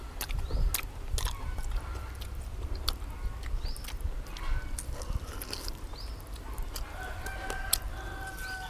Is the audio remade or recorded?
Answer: recorded